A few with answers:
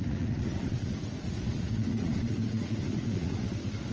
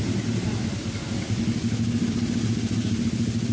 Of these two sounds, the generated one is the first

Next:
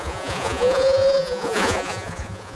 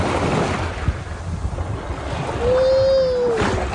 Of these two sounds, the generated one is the first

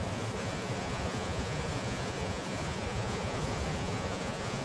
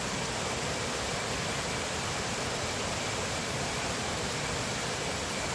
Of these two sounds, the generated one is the first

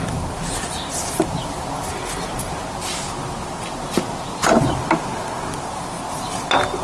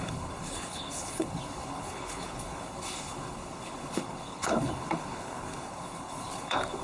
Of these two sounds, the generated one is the second